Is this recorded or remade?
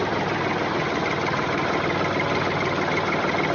recorded